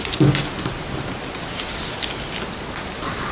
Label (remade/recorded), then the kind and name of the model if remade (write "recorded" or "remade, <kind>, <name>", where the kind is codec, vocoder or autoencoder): recorded